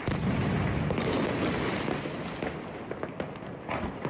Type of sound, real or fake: real